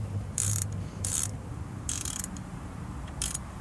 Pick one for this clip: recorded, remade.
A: remade